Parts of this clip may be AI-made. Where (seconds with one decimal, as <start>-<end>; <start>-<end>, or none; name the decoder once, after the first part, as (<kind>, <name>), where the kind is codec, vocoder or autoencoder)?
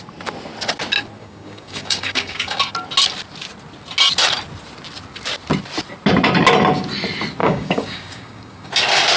1.2-2.6 (codec, DAC); 7.4-8.7